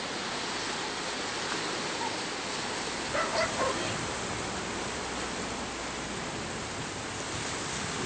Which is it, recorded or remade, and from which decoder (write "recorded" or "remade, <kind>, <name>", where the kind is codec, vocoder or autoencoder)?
recorded